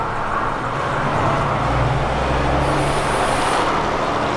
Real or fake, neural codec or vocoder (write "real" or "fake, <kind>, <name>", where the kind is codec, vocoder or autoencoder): real